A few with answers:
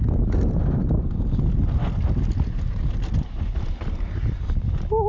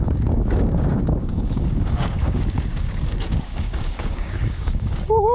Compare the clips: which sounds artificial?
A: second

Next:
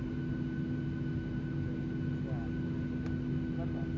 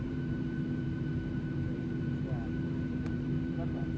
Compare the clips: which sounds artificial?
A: second